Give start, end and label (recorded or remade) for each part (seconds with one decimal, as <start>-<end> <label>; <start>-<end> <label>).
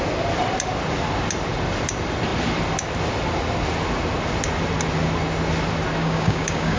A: 0.0-6.0 recorded; 6.0-6.8 remade